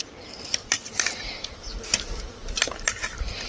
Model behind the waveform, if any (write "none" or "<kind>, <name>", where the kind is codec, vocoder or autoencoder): none